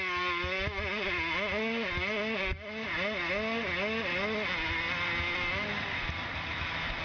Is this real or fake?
real